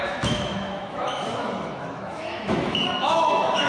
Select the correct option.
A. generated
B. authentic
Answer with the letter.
A